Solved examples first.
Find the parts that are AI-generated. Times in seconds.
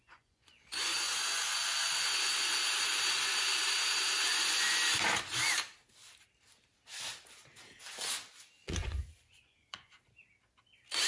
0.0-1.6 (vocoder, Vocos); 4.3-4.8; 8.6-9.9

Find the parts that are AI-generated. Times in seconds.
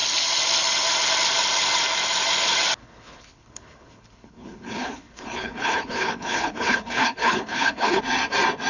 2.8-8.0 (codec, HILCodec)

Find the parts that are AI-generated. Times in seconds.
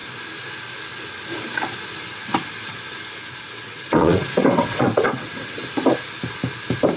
3.5-5.6 (vocoder, WaveNeXt)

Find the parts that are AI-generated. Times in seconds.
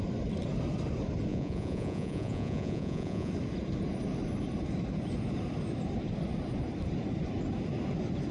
1.3-3.3 (vocoder, Vocos)